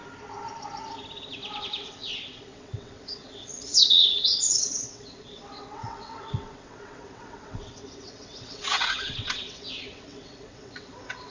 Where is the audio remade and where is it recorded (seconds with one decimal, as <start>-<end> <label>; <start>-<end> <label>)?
0.0-1.6 recorded; 1.6-11.3 remade